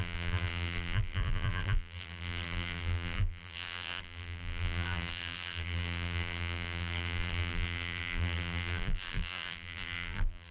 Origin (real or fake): fake